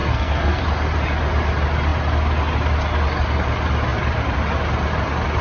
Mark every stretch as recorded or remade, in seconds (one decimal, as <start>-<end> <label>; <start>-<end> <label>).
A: 0.0-0.6 remade; 0.6-5.4 recorded